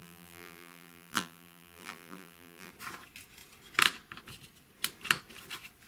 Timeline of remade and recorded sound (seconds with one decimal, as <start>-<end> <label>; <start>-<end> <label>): 0.0-2.7 remade; 2.7-5.9 recorded